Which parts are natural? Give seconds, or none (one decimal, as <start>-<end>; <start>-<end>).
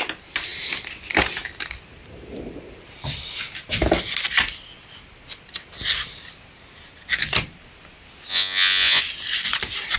0.0-8.3; 9.0-10.0